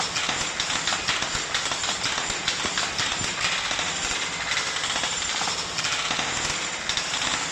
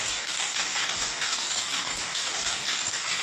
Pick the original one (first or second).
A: first